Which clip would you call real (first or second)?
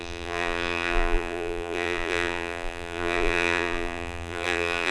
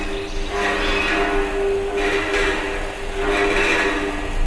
second